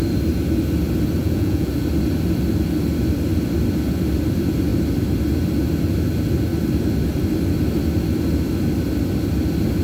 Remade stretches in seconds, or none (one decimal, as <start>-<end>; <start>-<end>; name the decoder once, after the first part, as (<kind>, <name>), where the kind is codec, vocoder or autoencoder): 1.2-1.7 (vocoder, Vocos)

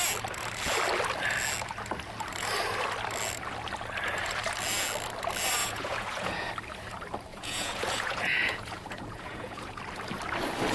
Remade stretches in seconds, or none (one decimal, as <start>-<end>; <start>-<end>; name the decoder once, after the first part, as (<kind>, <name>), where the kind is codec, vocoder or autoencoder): 5.6-6.5 (vocoder, Vocos); 7.3-9.8

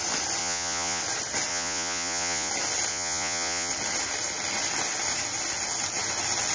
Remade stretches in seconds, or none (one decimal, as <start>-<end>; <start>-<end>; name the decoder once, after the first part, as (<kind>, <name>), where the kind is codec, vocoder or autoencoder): 0.4-1.0 (vocoder, Vocos); 1.5-2.5; 2.9-3.7

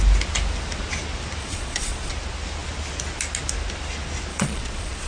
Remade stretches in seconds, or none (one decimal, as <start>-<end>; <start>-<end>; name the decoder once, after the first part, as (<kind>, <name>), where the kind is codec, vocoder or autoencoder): 1.4-2.1 (vocoder, Vocos); 4.3-5.1

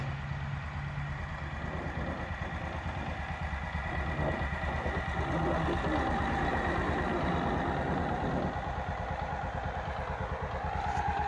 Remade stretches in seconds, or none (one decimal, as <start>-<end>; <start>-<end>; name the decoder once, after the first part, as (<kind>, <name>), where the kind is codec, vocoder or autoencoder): none